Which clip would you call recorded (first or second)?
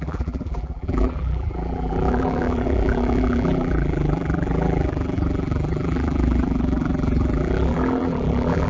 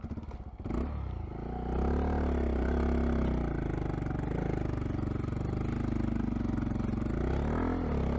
second